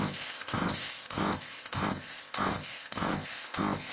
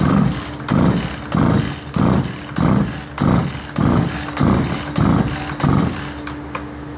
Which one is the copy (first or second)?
first